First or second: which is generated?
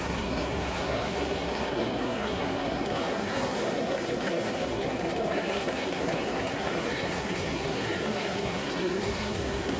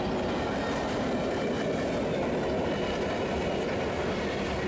first